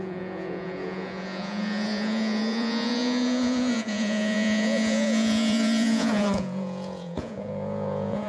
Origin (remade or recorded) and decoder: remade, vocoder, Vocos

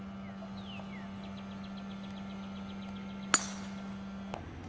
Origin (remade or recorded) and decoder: recorded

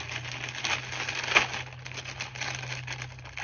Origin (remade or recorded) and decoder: recorded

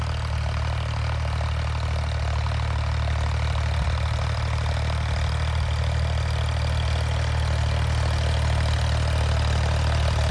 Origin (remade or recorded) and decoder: recorded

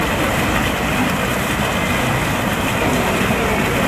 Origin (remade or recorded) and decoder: recorded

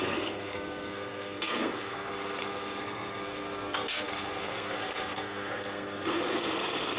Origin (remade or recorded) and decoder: remade, codec, SNAC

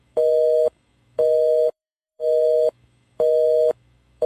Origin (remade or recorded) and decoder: remade, autoencoder, DAC-VAE